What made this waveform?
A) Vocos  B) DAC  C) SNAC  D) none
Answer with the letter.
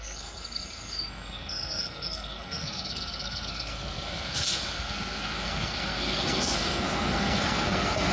C